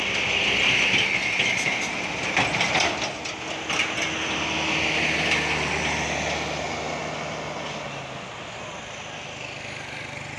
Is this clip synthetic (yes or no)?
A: no